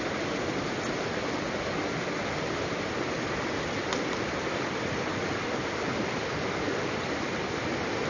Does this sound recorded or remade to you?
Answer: recorded